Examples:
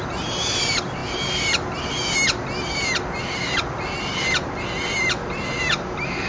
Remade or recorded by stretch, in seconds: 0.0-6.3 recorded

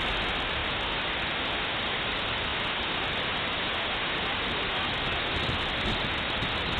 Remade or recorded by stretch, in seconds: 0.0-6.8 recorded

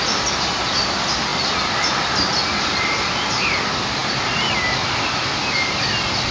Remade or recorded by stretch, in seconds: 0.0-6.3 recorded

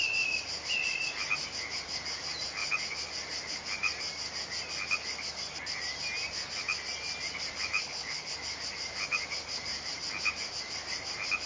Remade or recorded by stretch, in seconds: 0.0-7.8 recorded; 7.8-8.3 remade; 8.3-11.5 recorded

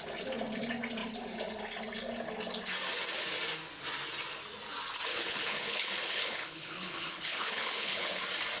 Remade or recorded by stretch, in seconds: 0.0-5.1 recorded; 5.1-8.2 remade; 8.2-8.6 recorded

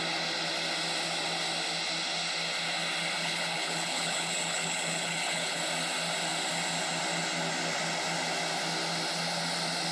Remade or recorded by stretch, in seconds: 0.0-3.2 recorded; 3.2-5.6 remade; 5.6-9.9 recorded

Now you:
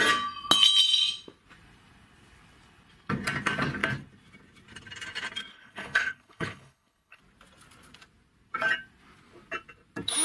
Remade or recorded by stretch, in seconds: 0.0-5.5 recorded; 5.5-7.2 remade; 7.2-10.2 recorded